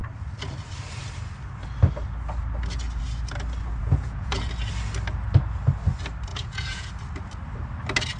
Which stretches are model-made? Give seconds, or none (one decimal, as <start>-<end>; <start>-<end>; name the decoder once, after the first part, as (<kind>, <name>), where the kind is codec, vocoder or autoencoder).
3.8-4.4 (vocoder, Vocos); 6.3-6.9